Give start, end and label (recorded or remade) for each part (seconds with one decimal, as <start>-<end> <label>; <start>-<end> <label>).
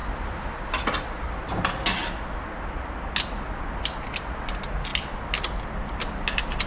0.0-6.7 recorded